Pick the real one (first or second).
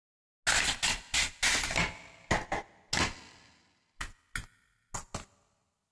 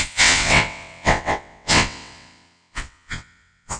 first